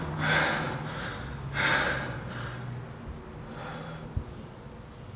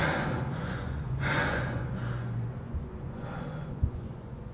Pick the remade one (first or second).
second